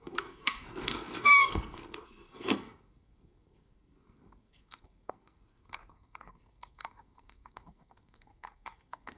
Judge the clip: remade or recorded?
remade